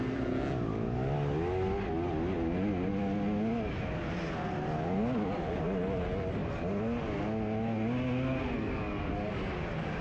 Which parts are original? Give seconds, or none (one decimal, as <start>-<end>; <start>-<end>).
0.0-10.0